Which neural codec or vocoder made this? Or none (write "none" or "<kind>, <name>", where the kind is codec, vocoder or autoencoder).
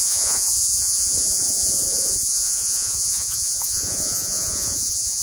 vocoder, Vocos